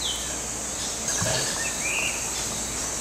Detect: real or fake real